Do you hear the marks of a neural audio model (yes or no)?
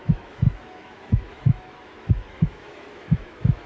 yes